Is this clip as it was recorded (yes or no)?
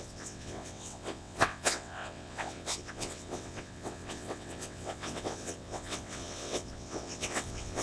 no